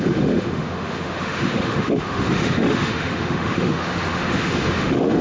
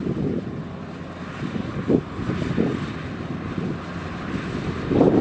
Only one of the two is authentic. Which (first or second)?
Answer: second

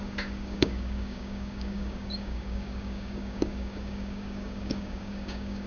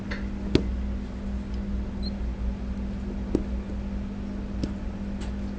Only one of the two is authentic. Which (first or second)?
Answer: second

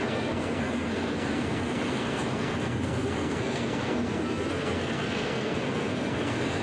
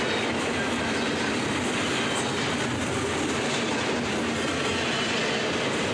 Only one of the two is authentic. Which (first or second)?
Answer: second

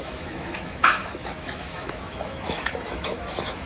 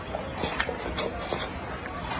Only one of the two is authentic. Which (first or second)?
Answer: second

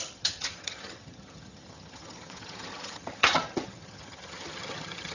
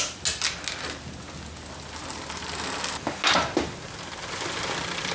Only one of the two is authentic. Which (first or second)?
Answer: second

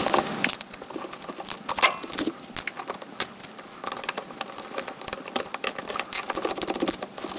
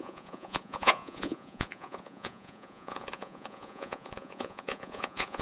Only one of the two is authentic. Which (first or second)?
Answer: first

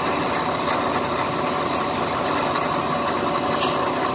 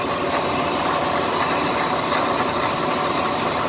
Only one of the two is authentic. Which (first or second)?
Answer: first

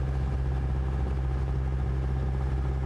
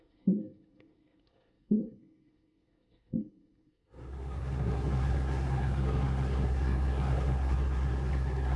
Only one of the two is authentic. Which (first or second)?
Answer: first